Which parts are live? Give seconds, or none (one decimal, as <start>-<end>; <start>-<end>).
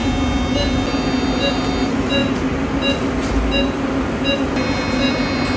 0.0-5.6